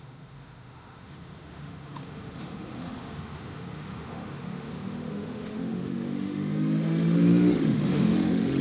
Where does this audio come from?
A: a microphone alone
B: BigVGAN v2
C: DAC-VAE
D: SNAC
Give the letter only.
C